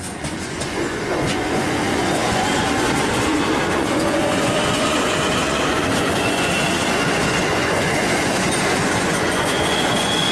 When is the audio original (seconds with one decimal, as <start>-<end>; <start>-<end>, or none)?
none